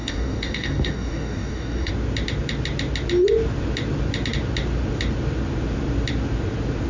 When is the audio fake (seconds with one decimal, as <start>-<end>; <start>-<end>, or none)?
0.0-1.9